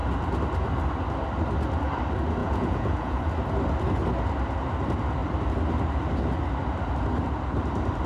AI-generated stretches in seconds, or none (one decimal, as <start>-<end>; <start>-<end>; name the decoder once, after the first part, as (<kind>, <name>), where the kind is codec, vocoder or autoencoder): 2.4-3.2 (vocoder, Vocos)